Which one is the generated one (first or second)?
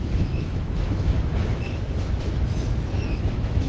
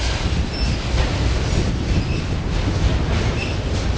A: first